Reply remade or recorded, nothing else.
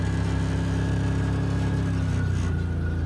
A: recorded